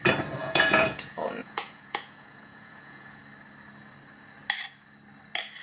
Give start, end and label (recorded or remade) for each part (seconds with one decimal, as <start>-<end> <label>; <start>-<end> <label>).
0.0-0.4 recorded; 0.4-3.2 remade; 3.2-5.6 recorded

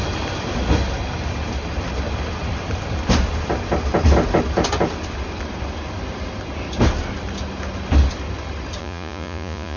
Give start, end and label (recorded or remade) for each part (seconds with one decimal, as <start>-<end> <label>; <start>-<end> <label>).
0.0-8.8 recorded; 8.8-9.8 remade

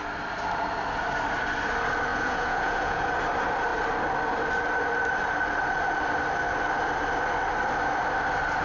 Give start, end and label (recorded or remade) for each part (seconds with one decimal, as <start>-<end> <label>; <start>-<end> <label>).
0.0-2.1 recorded; 2.1-3.1 remade; 3.1-8.6 recorded

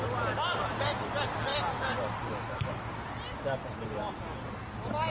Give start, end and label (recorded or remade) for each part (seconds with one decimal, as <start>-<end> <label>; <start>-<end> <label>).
0.0-5.1 recorded

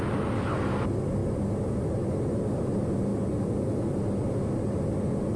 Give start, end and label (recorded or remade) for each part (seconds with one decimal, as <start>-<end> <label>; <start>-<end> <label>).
0.0-5.4 recorded